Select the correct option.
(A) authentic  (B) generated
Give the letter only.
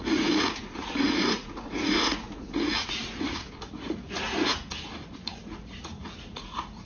B